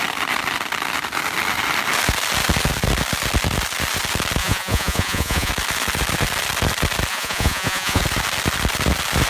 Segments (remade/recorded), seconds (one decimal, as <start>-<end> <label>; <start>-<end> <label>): 0.0-4.4 recorded; 4.4-5.5 remade; 5.5-7.1 recorded; 7.1-8.0 remade; 8.0-9.3 recorded